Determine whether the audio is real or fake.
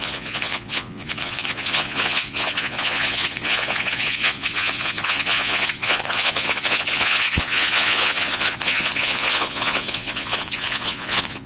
fake